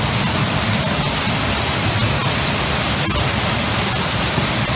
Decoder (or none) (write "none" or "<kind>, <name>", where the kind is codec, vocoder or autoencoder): none